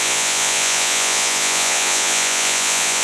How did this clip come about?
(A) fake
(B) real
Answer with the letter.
A